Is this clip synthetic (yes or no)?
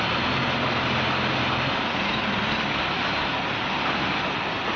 no